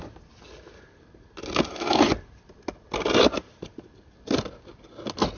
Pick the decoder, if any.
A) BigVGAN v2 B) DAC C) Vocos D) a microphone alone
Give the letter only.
D